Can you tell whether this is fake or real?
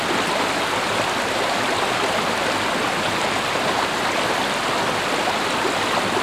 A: fake